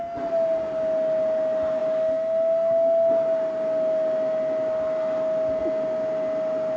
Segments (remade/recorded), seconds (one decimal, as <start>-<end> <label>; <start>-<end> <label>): 0.0-6.8 recorded

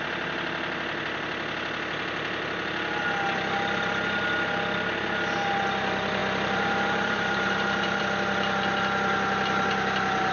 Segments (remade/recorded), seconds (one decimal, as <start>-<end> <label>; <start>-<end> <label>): 0.0-6.2 recorded; 6.2-8.0 remade; 8.0-10.3 recorded